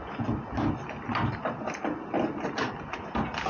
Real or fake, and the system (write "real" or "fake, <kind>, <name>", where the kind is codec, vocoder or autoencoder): real